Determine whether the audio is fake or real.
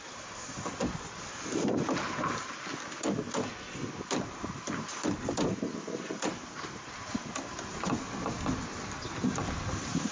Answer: real